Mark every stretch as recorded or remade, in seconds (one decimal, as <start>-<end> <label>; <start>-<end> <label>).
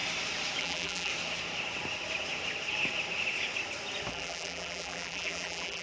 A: 0.0-0.6 recorded; 0.6-1.1 remade; 1.1-4.1 recorded; 4.1-5.8 remade